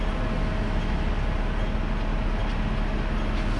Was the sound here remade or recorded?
recorded